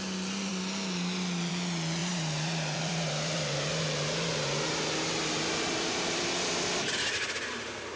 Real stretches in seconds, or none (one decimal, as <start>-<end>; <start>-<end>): 0.0-2.0; 6.2-8.0